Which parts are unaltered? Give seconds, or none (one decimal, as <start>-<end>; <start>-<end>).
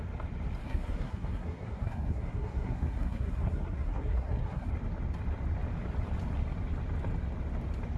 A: 0.0-0.6; 4.7-8.0